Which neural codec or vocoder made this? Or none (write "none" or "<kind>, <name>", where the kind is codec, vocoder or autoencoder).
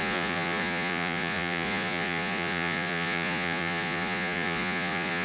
vocoder, Vocos